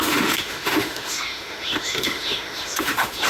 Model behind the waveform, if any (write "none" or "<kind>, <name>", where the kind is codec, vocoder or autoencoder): autoencoder, DAC-VAE